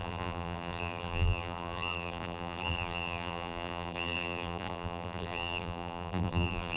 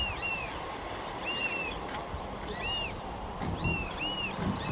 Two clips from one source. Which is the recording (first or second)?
second